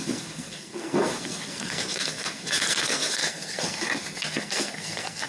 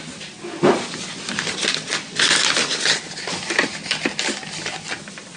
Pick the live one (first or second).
second